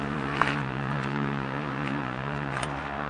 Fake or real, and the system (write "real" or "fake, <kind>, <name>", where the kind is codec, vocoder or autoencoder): fake, vocoder, Vocos